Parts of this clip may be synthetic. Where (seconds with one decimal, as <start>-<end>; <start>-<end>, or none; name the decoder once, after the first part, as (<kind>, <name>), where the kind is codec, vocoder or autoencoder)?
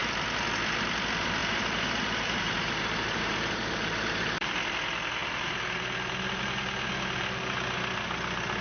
1.4-4.5 (vocoder, BigVGAN v2)